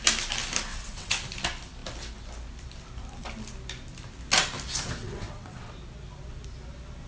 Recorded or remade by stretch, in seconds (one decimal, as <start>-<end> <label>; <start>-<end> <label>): 0.0-0.7 recorded; 0.7-1.2 remade; 1.2-5.0 recorded; 5.0-5.7 remade; 5.7-7.1 recorded